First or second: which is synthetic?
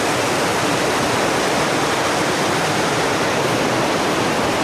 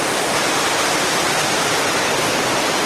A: second